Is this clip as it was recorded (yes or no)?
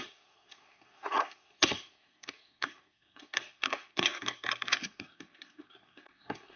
no